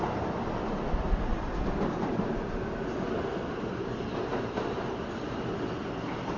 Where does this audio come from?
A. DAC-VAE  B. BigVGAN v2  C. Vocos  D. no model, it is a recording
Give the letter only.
D